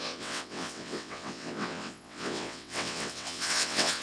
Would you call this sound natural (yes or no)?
no